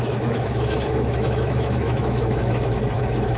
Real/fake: fake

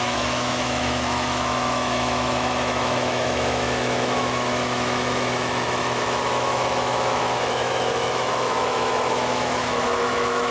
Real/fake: fake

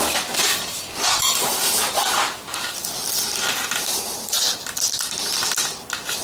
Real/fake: real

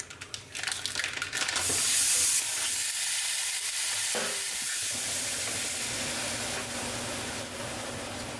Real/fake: real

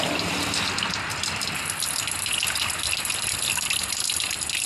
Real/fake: real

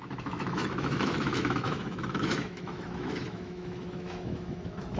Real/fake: fake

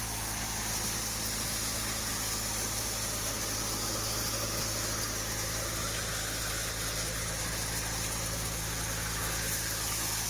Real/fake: real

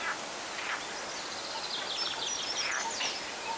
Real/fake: real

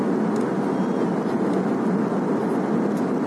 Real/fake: real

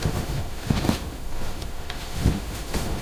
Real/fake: fake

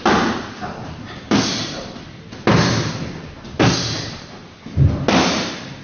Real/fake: real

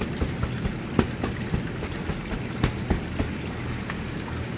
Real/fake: real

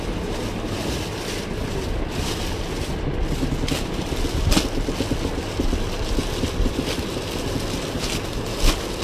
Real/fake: real